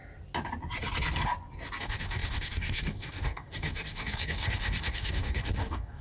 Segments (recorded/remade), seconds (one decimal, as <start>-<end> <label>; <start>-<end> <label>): 0.0-1.8 recorded; 1.8-6.0 remade